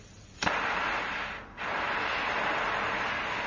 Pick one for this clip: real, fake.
real